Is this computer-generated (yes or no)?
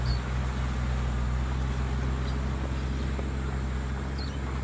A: no